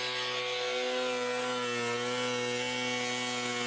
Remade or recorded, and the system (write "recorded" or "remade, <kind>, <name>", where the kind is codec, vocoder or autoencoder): recorded